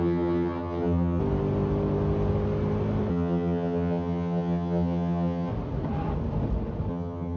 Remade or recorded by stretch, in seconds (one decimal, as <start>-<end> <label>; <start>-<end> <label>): 0.0-1.2 remade; 1.2-3.1 recorded; 3.1-5.5 remade; 5.5-6.9 recorded; 6.9-7.4 remade